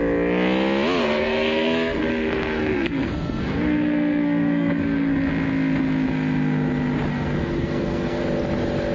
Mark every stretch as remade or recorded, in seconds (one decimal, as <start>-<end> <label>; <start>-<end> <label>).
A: 0.0-1.0 recorded; 1.0-5.3 remade; 5.3-7.1 recorded; 7.1-8.2 remade; 8.2-8.9 recorded